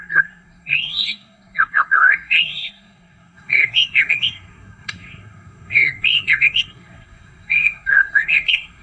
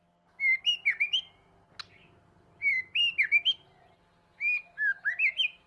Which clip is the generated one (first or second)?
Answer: first